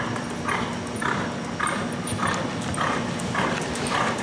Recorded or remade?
recorded